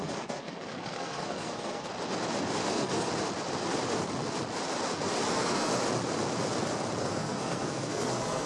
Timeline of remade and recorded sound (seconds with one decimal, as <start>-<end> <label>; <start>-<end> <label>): 0.0-1.9 remade; 1.9-2.7 recorded; 2.7-3.1 remade; 3.1-5.3 recorded; 5.3-5.7 remade; 5.7-7.0 recorded; 7.0-8.5 remade